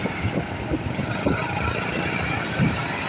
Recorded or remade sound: recorded